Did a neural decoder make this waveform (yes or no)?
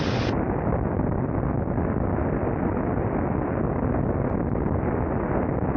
no